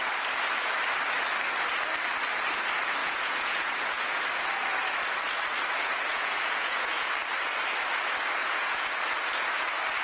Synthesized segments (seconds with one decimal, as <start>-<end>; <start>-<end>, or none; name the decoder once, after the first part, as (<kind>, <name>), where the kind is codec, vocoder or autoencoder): 3.0-4.2 (vocoder, Vocos); 6.1-7.1; 8.4-8.9